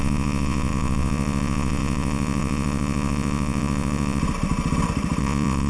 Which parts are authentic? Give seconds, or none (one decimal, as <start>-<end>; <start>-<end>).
4.2-5.2